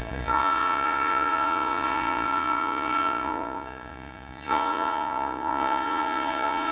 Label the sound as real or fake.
fake